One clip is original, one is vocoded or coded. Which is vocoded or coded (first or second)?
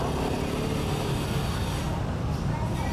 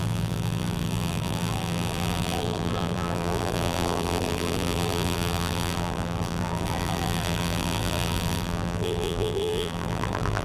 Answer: second